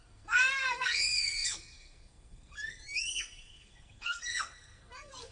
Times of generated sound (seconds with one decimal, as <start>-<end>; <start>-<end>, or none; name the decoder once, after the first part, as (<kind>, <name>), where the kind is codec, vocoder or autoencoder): 0.0-5.3 (codec, SNAC)